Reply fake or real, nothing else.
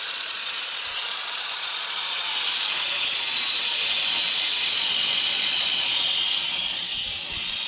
fake